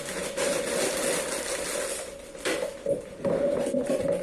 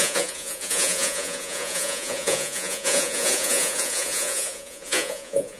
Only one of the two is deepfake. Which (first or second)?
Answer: second